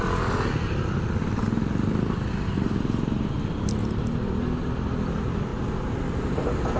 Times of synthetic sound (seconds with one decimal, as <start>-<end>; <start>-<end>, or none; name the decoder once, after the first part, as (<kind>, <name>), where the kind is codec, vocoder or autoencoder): none